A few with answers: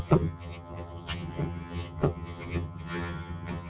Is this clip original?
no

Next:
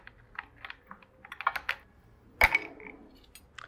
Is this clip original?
yes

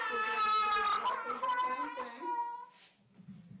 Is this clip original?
yes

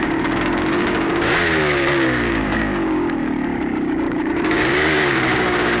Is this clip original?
no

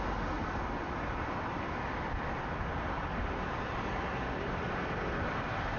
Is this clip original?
yes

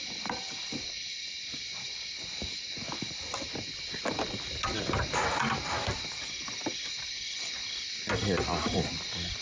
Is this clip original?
yes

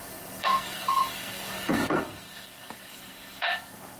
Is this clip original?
no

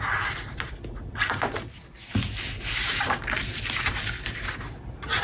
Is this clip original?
yes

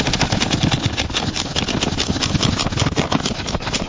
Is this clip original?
yes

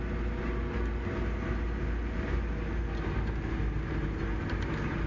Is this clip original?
yes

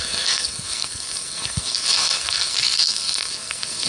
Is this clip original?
no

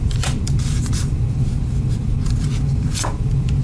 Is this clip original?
no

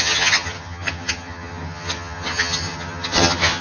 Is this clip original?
no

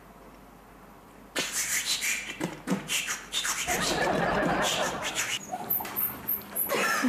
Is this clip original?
no